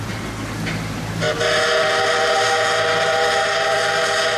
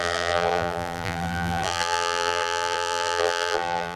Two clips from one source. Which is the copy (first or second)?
second